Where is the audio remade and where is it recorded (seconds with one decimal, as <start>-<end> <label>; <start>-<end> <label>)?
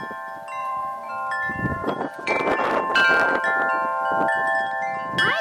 0.0-0.6 recorded; 0.6-1.1 remade; 1.1-1.7 recorded; 1.7-2.4 remade; 2.4-5.4 recorded